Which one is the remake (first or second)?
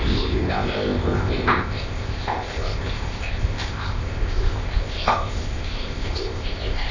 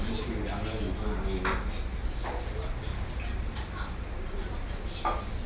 first